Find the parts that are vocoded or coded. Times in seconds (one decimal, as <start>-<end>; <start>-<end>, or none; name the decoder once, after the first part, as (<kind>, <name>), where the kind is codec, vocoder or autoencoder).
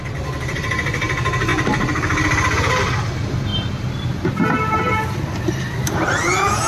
1.5-2.8 (vocoder, BigVGAN v2)